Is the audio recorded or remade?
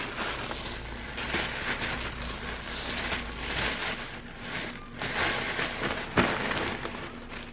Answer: recorded